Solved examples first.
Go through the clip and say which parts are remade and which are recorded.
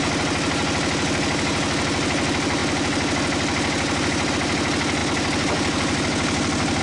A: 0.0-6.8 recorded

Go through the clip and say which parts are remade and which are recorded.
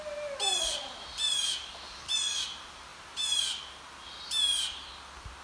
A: 0.0-0.7 recorded; 0.7-1.4 remade; 1.4-5.4 recorded